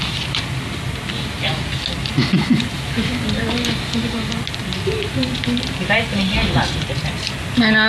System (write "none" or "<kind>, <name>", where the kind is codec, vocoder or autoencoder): none